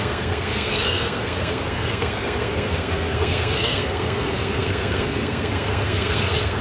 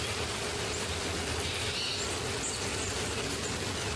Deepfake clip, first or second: first